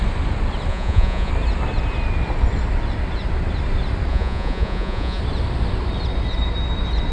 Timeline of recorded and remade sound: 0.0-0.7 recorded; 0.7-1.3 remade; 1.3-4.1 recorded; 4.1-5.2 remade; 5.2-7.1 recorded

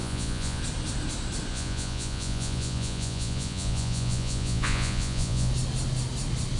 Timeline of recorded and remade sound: 0.0-0.6 remade; 0.6-1.5 recorded; 1.5-5.5 remade; 5.5-6.6 recorded

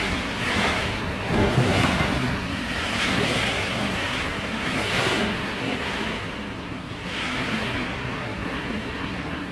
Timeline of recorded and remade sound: 0.0-9.5 remade

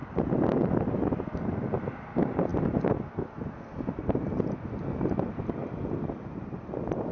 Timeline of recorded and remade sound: 0.0-7.1 recorded